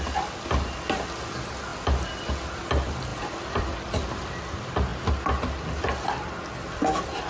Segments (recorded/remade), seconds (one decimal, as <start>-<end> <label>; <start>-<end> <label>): 0.0-7.3 recorded